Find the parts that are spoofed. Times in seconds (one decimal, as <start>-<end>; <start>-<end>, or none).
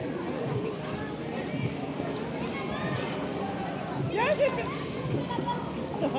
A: 0.0-0.8; 3.3-4.0